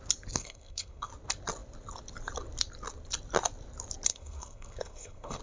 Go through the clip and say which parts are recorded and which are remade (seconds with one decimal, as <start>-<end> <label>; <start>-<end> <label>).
0.0-0.4 recorded; 0.4-1.1 remade; 1.1-4.1 recorded; 4.1-5.4 remade